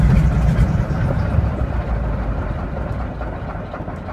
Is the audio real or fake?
real